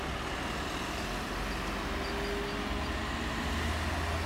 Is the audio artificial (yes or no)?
no